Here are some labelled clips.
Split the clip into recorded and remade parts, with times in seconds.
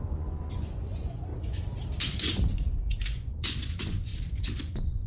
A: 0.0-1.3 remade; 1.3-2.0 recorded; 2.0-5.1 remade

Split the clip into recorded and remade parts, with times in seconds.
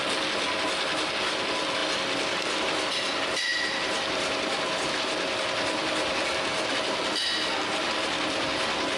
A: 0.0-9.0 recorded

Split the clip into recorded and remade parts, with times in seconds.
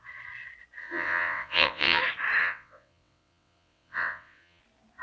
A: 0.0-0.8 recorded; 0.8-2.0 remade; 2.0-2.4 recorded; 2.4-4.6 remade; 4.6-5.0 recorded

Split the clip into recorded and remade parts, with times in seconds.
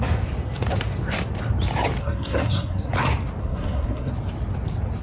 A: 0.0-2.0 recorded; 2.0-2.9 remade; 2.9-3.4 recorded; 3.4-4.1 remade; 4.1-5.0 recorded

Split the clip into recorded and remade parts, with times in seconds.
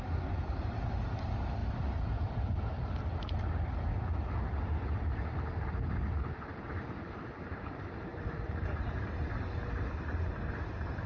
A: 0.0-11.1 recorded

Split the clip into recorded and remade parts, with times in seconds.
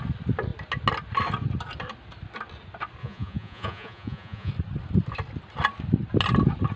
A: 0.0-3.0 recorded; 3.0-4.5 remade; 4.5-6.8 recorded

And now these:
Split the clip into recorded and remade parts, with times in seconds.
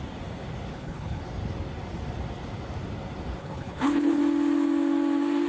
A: 0.0-0.7 recorded; 0.7-1.2 remade; 1.2-3.4 recorded; 3.4-4.2 remade; 4.2-5.5 recorded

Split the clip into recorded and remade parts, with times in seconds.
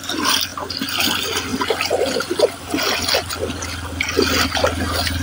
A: 0.0-0.5 recorded; 0.5-1.1 remade; 1.1-5.2 recorded